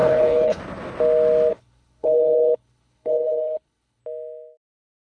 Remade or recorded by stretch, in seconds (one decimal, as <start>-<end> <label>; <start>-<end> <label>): 0.0-0.6 remade; 0.6-1.5 recorded; 1.5-4.0 remade; 4.0-5.0 recorded